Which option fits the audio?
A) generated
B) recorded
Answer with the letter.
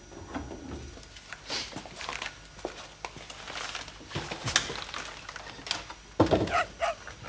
B